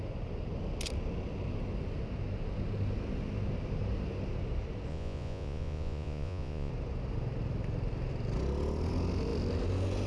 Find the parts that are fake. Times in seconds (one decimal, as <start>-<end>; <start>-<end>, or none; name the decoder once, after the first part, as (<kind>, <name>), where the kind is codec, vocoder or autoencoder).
4.9-6.7 (vocoder, Vocos)